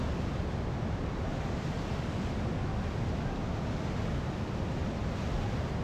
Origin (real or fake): real